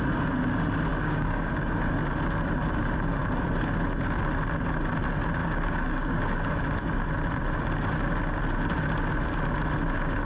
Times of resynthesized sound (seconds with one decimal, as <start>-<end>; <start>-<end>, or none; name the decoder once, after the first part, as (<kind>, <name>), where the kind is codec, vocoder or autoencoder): 0.9-1.5 (codec, DAC); 5.4-6.6